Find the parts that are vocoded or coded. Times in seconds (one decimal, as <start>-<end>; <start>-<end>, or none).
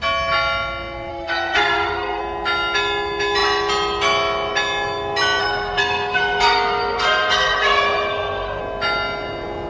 1.1-2.2; 5.4-8.6